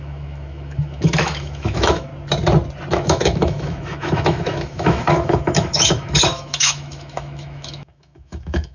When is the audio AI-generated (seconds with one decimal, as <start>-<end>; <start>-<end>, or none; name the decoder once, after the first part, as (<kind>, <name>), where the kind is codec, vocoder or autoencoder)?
0.0-2.1 (autoencoder, DAC-VAE); 2.9-8.7